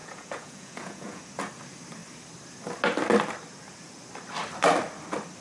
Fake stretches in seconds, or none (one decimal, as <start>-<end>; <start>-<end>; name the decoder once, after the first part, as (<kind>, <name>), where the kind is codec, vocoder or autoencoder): 0.0-1.2 (vocoder, Vocos)